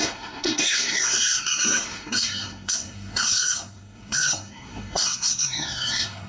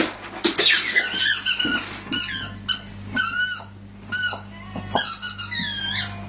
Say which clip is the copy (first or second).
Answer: first